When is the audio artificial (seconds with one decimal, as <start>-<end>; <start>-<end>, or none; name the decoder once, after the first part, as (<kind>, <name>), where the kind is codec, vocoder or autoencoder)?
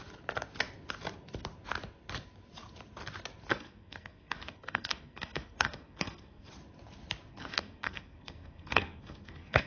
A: 3.5-6.5 (codec, SNAC); 7.3-9.7